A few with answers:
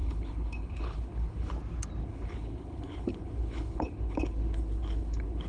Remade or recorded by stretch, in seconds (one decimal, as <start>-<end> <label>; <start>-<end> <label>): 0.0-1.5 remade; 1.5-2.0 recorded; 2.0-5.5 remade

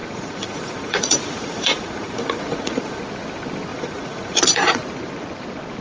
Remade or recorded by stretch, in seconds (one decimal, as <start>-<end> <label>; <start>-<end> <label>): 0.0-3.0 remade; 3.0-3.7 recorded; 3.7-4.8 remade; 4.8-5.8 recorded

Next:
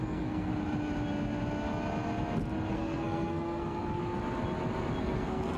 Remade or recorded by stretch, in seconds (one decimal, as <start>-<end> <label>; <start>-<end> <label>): 0.0-0.5 remade; 0.5-2.7 recorded; 2.7-4.0 remade; 4.0-5.0 recorded; 5.0-5.6 remade

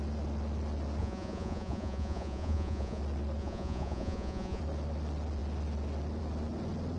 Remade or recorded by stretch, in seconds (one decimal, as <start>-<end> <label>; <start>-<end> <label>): 0.0-1.0 recorded; 1.0-3.0 remade; 3.0-3.4 recorded; 3.4-4.6 remade; 4.6-7.0 recorded

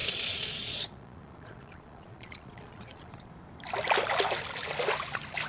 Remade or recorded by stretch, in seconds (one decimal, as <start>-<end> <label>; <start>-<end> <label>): 0.0-3.3 remade; 3.3-5.5 recorded

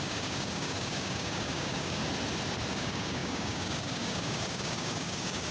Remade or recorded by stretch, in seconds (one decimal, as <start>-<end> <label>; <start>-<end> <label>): 0.0-2.0 remade; 2.0-2.7 recorded; 2.7-5.5 remade